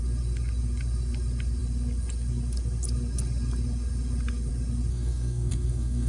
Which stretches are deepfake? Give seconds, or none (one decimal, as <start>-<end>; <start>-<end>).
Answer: 4.9-6.1